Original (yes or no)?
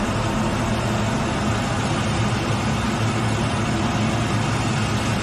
yes